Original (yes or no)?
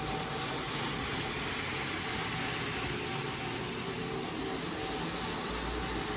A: yes